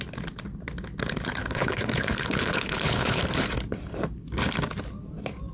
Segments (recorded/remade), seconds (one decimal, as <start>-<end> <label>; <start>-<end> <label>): 0.0-1.4 recorded; 1.4-3.2 remade; 3.2-5.5 recorded